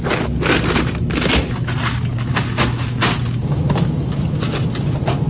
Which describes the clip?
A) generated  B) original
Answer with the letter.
B